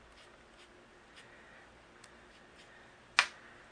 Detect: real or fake real